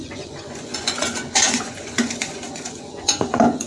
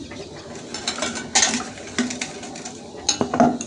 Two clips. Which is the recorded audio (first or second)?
second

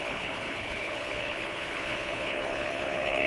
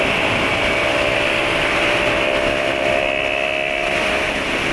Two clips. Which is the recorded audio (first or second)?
second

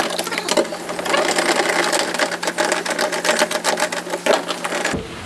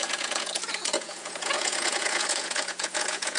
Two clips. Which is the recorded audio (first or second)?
first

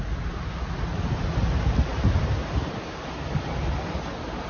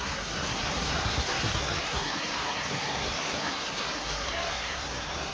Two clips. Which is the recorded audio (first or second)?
first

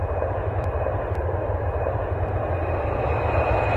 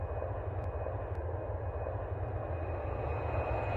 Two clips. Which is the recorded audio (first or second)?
second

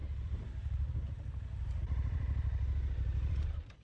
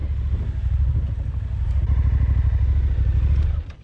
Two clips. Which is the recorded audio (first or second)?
second